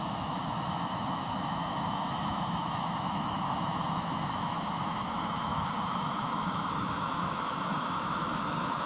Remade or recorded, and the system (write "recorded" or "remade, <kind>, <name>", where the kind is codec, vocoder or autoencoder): remade, autoencoder, DAC-VAE